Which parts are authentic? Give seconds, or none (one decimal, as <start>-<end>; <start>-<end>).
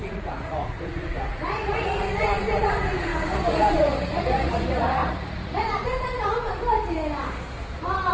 6.5-8.1